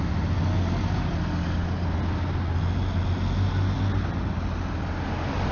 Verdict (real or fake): real